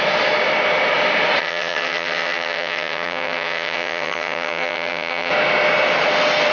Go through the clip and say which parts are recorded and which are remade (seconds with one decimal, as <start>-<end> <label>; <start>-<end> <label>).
0.0-1.4 recorded; 1.4-5.3 remade; 5.3-6.5 recorded